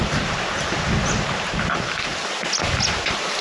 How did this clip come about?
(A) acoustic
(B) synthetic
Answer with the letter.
A